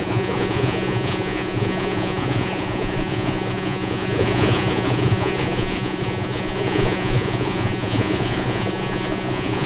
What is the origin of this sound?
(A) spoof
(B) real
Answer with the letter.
A